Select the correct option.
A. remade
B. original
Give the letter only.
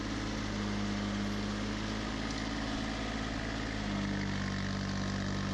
B